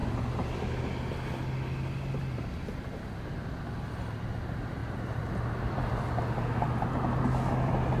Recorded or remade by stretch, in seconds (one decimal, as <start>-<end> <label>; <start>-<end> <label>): 0.0-0.6 remade; 0.6-4.8 recorded; 4.8-6.1 remade; 6.1-8.0 recorded